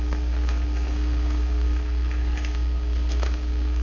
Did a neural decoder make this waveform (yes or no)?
yes